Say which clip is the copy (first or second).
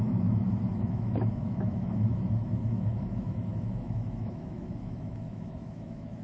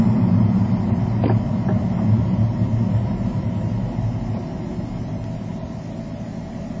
first